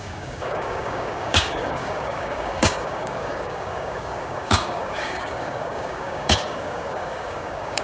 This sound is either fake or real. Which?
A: fake